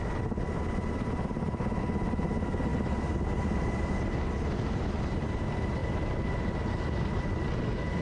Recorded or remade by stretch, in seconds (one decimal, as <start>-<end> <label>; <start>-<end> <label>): 0.0-8.0 recorded